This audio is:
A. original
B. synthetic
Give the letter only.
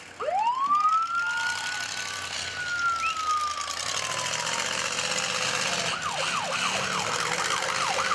A